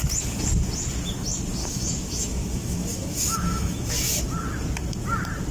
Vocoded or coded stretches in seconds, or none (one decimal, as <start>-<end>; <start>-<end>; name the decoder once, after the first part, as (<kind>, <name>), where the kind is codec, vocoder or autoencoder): 1.6-4.2 (autoencoder, DAC-VAE)